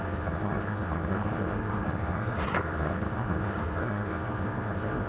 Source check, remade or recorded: remade